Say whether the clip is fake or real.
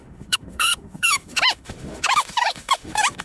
fake